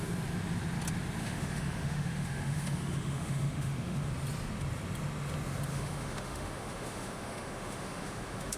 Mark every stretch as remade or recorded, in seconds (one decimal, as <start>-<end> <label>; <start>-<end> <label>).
0.0-1.2 recorded; 1.2-4.1 remade; 4.1-5.7 recorded; 5.7-8.6 remade